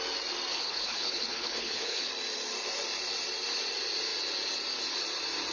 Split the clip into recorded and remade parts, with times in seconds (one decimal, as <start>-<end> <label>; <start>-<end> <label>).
0.0-0.5 recorded; 0.5-2.1 remade; 2.1-5.5 recorded